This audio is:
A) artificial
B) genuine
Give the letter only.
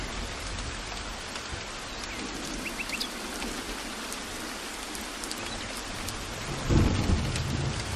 B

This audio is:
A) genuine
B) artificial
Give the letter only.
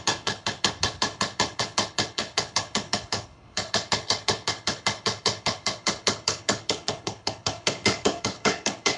B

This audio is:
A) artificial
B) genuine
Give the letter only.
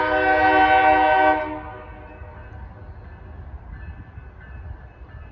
B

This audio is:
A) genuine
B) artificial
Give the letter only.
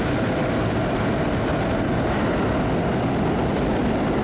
A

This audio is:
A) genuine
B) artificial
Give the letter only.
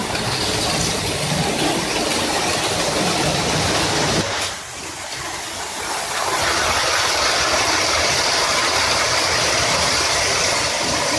A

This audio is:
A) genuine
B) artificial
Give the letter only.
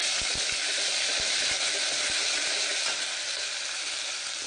A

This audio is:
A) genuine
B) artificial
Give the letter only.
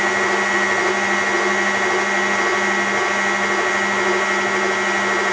A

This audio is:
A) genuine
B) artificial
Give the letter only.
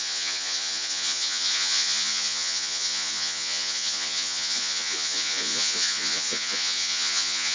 B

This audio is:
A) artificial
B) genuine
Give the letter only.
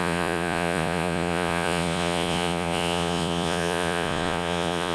A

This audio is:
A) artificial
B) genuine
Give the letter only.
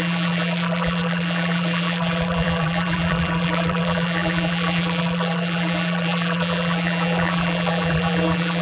A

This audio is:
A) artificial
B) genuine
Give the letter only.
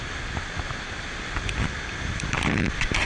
B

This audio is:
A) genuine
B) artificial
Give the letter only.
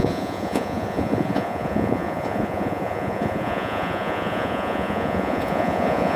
B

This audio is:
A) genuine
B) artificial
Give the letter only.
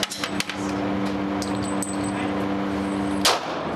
A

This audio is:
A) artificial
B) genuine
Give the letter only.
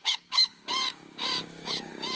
A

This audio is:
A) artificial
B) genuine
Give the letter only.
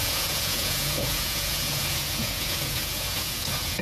A